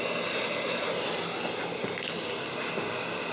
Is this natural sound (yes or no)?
yes